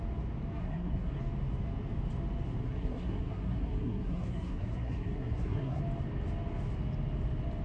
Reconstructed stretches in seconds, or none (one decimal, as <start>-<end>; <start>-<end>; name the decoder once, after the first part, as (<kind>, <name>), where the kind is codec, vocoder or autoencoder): 0.6-1.2 (codec, SNAC); 2.6-5.8